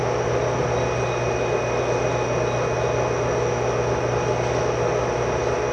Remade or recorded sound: recorded